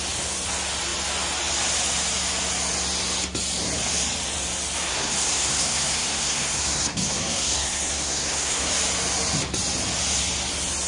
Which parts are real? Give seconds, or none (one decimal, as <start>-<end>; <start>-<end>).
0.0-4.9; 8.7-10.9